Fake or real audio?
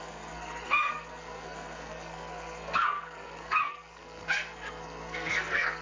fake